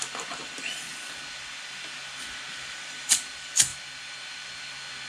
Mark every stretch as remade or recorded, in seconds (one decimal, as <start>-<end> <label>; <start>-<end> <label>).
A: 0.0-0.9 remade; 0.9-2.5 recorded; 2.5-3.7 remade; 3.7-5.1 recorded